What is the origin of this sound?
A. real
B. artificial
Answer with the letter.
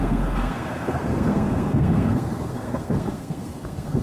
B